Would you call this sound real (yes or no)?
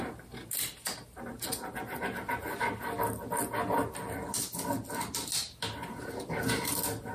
yes